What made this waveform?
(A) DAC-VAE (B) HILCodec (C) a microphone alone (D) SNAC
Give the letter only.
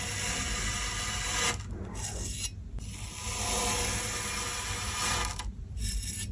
C